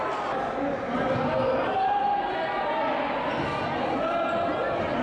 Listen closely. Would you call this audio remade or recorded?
recorded